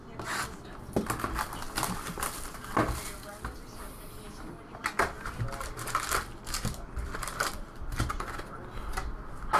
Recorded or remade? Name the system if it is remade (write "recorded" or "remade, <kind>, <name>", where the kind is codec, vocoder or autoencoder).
recorded